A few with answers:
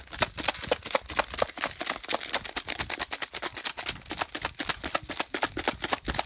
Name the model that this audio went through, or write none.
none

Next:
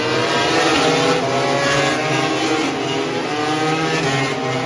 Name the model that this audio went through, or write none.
none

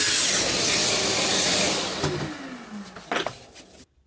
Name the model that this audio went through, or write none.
none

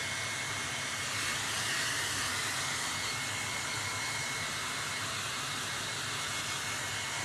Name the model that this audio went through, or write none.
none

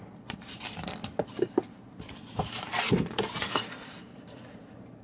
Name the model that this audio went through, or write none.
vocoder, BigVGAN v2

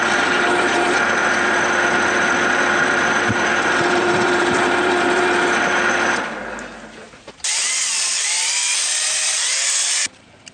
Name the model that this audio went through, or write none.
none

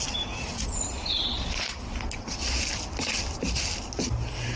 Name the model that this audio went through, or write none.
none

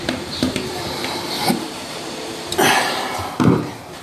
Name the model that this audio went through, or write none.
vocoder, BigVGAN v2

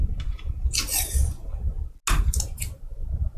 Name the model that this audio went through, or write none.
none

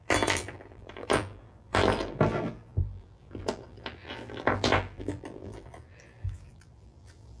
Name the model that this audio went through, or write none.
vocoder, BigVGAN v2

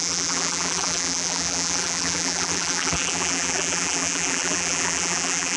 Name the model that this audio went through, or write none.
vocoder, BigVGAN v2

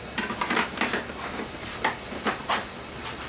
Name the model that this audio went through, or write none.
none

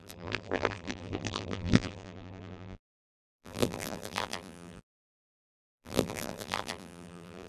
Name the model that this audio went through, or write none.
vocoder, BigVGAN v2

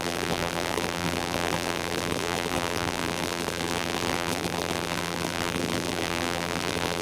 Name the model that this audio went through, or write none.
vocoder, BigVGAN v2